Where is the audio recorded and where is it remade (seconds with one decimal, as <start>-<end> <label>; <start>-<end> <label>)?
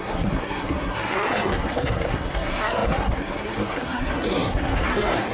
0.0-5.3 remade